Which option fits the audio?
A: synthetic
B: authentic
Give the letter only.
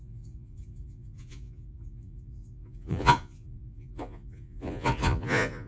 A